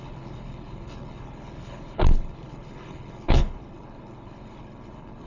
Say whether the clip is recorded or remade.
remade